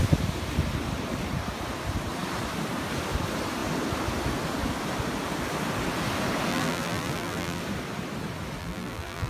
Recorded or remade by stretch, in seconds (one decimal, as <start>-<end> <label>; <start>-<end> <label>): 0.0-6.5 recorded; 6.5-7.6 remade; 7.6-8.6 recorded; 8.6-9.3 remade